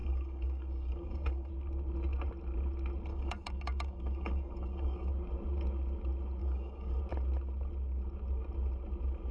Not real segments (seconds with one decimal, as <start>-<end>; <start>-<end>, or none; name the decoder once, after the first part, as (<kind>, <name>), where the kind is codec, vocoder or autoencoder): 0.0-1.5 (codec, DAC); 3.1-5.1; 6.4-7.0